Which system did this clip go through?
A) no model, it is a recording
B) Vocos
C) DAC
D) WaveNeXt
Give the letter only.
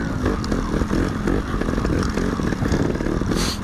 A